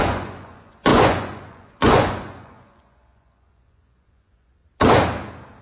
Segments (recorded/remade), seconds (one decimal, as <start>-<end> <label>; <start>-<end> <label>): 0.0-4.6 remade; 4.6-5.6 recorded